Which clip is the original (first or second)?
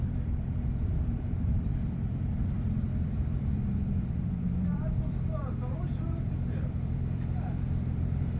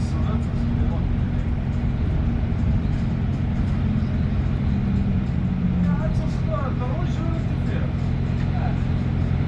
second